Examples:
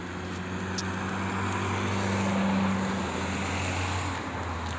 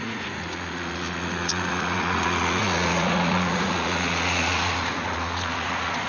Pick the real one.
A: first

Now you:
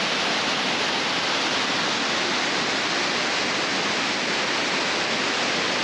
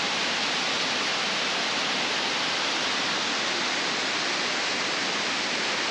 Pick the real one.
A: first